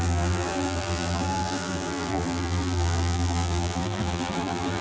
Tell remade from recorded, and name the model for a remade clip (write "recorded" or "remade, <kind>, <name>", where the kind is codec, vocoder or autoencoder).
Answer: remade, vocoder, BigVGAN v2